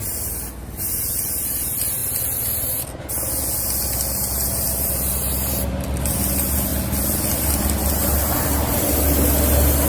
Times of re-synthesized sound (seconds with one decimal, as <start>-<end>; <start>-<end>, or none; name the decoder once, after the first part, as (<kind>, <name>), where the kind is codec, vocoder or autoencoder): none